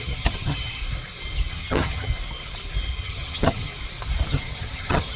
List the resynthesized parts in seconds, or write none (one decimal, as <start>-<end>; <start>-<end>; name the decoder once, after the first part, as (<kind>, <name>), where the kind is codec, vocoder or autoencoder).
0.0-0.8 (vocoder, HiFi-GAN); 1.5-2.1; 3.0-3.7; 4.3-5.2